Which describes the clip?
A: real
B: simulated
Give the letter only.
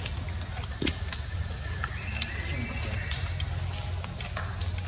A